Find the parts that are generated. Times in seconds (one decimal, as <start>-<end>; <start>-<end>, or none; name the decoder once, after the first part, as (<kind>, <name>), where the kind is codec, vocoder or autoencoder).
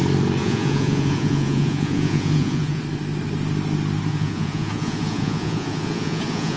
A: 0.4-2.8 (vocoder, Vocos); 4.1-6.6